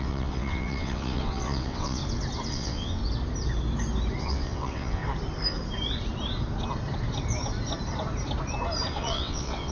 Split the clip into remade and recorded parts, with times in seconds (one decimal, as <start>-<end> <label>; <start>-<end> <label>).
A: 0.0-2.0 remade; 2.0-2.5 recorded; 2.5-3.0 remade; 3.0-4.2 recorded; 4.2-5.0 remade; 5.0-8.9 recorded; 8.9-9.7 remade